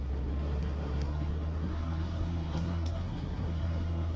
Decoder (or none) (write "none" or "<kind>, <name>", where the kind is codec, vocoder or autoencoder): codec, SNAC